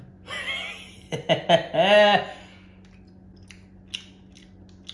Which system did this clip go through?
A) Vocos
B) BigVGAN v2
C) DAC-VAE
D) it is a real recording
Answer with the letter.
D